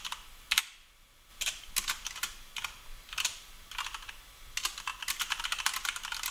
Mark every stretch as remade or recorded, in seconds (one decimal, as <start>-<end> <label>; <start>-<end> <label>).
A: 0.0-6.3 recorded